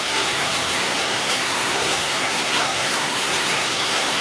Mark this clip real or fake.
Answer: fake